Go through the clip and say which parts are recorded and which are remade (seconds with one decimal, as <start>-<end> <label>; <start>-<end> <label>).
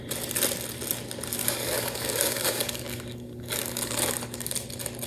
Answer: 0.0-1.4 recorded; 1.4-4.5 remade; 4.5-5.1 recorded